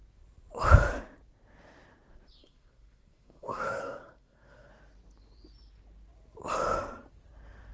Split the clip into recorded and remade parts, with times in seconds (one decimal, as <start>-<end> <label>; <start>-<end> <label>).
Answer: 0.0-2.4 recorded; 2.4-4.7 remade; 4.7-7.7 recorded